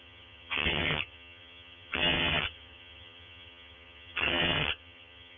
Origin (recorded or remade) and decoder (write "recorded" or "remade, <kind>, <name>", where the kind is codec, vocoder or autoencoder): remade, vocoder, HiFi-GAN